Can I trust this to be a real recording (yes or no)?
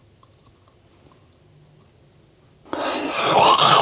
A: yes